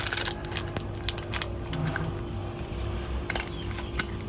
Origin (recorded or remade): recorded